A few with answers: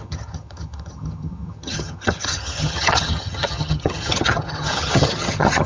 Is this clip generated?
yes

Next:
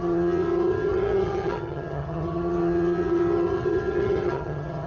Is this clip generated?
yes